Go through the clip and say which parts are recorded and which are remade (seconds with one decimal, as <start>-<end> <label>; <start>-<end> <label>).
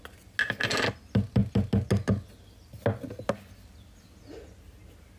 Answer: 0.0-5.2 recorded